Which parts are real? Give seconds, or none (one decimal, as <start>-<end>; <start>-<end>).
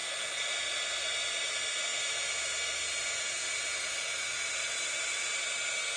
0.0-6.0